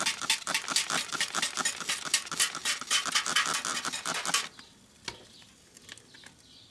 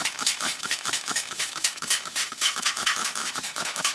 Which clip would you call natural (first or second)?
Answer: first